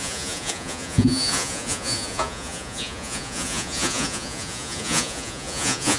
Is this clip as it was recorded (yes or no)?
no